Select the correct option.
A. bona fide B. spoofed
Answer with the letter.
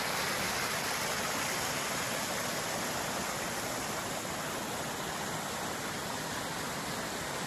A